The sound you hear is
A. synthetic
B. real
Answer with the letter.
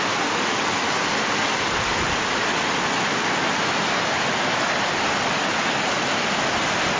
A